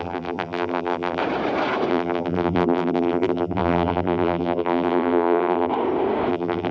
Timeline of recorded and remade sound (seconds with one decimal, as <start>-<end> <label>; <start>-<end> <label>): 0.0-1.2 remade; 1.2-1.9 recorded; 1.9-5.7 remade; 5.7-6.3 recorded; 6.3-6.7 remade